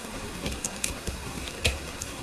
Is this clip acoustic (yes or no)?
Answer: no